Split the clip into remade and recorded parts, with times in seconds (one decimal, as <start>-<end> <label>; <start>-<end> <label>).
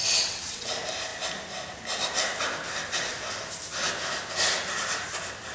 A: 0.0-0.7 remade; 0.7-5.5 recorded